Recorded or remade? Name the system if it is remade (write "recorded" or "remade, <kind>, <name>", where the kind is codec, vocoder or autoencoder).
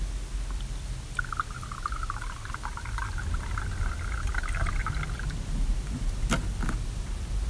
recorded